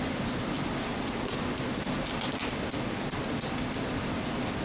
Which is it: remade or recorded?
recorded